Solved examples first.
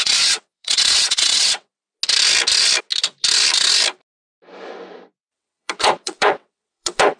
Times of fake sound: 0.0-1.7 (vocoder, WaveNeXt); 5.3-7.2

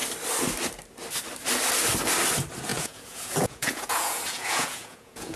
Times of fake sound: 2.7-5.4 (vocoder, Vocos)

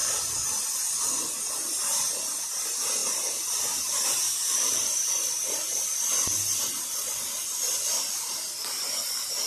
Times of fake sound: 2.4-9.5 (vocoder, BigVGAN v2)

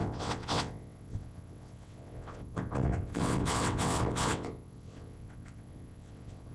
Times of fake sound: 0.0-6.5 (vocoder, WaveNeXt)

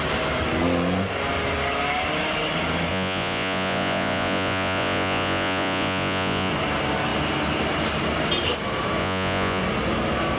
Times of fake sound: 2.9-6.5 (vocoder, Vocos); 9.0-9.6